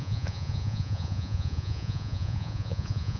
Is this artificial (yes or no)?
yes